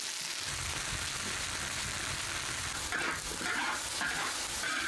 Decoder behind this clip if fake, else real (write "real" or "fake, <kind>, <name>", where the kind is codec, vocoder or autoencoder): real